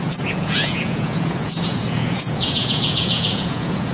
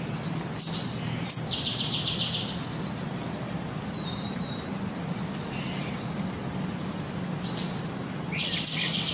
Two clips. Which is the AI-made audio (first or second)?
first